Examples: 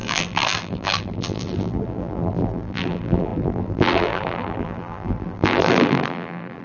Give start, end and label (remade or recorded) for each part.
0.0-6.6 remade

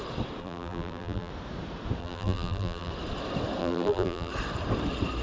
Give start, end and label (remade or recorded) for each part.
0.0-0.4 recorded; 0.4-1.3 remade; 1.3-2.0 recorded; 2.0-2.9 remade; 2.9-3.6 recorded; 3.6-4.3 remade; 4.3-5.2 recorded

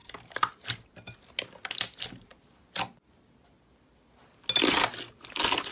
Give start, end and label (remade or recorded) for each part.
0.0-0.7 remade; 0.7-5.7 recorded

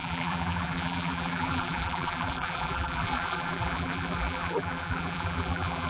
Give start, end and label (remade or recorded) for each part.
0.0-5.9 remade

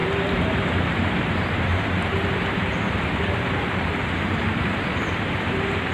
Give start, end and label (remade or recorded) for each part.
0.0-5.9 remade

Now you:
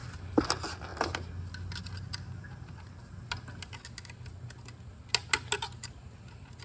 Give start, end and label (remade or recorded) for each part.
0.0-6.6 recorded

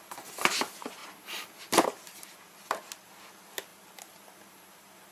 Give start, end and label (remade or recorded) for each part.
0.0-3.7 recorded; 3.7-4.5 remade; 4.5-5.1 recorded